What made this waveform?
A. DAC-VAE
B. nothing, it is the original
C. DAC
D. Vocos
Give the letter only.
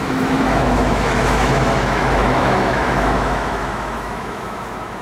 A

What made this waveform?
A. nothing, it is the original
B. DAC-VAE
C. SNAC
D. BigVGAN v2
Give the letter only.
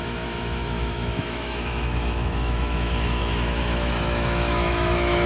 B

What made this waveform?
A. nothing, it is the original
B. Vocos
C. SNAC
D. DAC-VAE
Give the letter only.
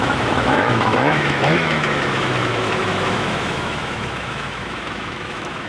D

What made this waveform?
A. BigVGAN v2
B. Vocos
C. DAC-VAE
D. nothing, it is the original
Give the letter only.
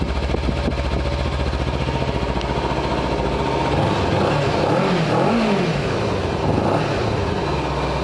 D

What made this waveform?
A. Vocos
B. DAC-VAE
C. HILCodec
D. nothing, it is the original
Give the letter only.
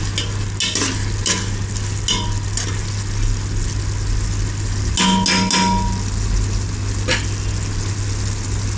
D